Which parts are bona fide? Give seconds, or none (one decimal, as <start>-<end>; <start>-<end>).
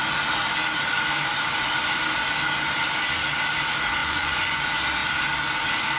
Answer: 0.0-4.0; 4.6-6.0